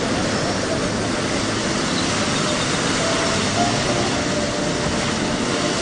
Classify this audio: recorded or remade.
recorded